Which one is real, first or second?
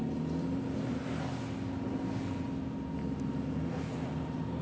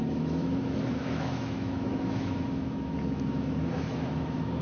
first